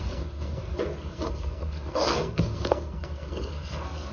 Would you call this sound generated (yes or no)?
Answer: yes